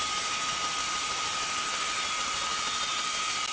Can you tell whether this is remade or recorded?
recorded